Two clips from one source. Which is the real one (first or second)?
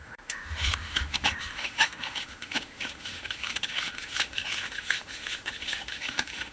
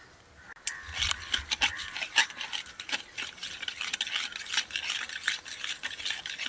second